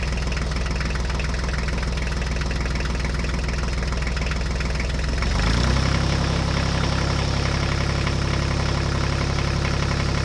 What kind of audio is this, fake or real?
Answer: real